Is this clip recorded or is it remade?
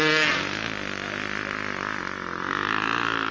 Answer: recorded